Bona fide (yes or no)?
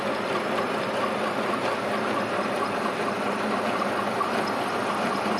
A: yes